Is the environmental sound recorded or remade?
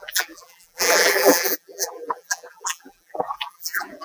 remade